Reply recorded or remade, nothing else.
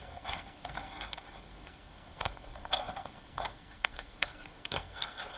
remade